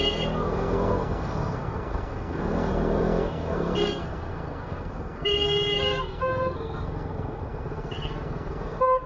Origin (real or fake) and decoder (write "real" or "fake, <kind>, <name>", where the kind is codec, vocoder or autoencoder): fake, codec, SNAC